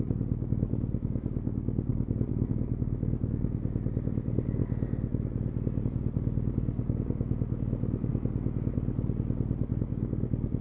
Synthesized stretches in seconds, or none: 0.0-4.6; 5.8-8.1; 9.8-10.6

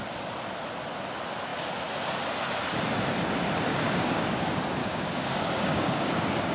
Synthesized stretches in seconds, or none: 3.7-4.3; 4.8-6.5

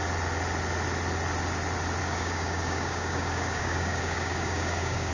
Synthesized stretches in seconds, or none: 2.0-5.1

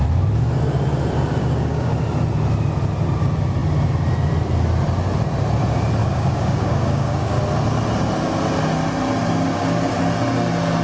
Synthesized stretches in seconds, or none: 1.4-1.9; 6.0-7.4; 9.5-10.0

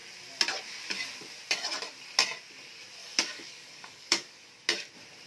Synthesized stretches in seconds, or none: 3.0-4.5